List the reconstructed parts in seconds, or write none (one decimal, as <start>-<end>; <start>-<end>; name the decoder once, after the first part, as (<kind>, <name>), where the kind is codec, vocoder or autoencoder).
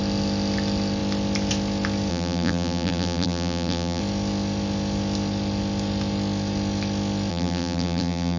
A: 2.1-4.0 (vocoder, BigVGAN v2); 7.3-8.4